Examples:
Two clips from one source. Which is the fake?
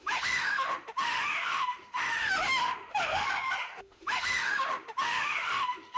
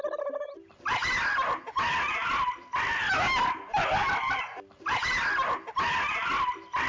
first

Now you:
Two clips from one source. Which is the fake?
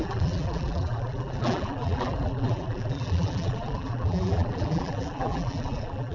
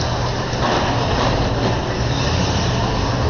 first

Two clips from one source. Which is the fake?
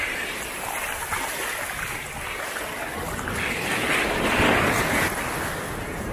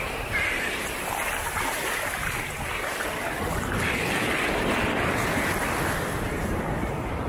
second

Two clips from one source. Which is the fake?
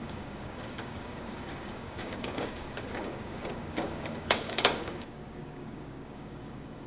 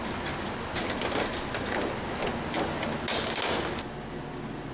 first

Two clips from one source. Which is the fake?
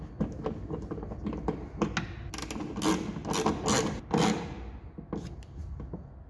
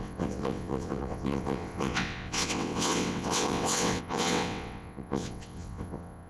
second